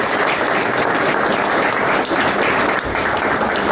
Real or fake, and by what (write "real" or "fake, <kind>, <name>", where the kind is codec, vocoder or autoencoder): real